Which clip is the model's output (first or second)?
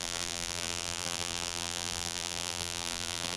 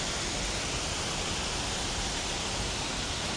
first